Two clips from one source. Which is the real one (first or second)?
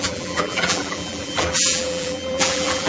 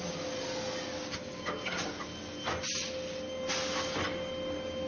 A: second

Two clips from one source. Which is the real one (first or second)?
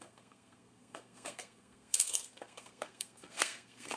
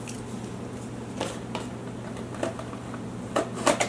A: second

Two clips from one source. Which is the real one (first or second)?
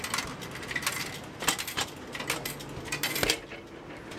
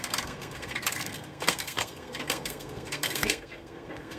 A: first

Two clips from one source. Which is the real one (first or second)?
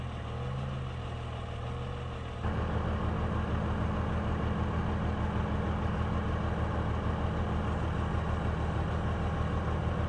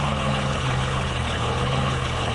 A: first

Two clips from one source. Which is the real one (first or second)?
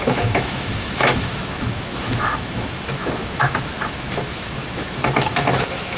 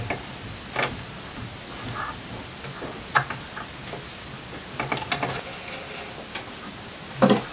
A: second